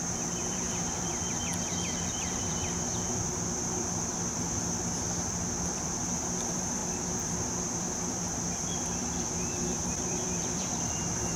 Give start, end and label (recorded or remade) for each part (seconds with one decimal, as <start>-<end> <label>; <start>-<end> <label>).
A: 0.0-1.5 remade; 1.5-2.0 recorded; 2.0-11.4 remade

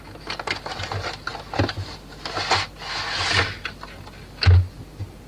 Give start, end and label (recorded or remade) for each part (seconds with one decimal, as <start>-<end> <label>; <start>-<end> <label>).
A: 0.0-5.3 recorded

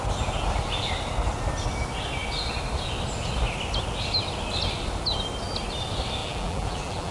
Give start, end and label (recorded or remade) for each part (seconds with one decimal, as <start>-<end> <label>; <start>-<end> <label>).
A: 0.0-6.2 recorded; 6.2-7.1 remade

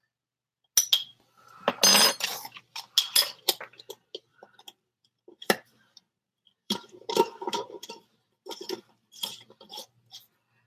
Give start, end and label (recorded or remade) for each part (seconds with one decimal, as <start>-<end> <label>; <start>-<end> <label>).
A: 0.0-4.3 recorded; 4.3-9.1 remade; 9.1-10.7 recorded

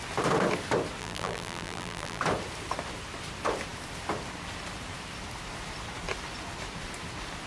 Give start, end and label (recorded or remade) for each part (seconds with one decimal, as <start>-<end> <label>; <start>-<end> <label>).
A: 0.0-1.0 recorded; 1.0-2.2 remade; 2.2-7.5 recorded

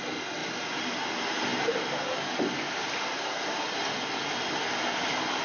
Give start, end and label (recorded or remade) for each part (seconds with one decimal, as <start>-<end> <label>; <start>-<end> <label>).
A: 0.0-0.4 recorded; 0.4-1.1 remade; 1.1-1.5 recorded; 1.5-4.0 remade; 4.0-5.4 recorded